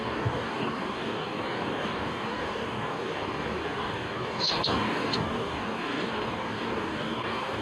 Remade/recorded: remade